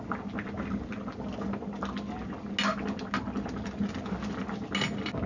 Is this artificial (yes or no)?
no